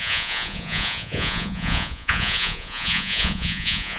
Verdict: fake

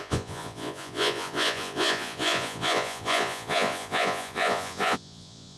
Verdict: fake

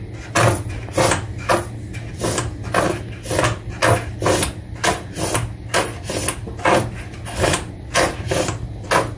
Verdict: real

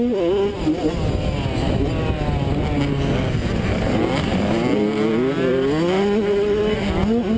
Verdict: real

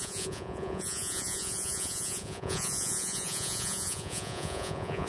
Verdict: fake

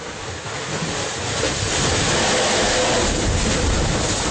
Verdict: real